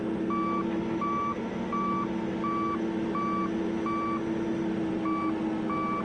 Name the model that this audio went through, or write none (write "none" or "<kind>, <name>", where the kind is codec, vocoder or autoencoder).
none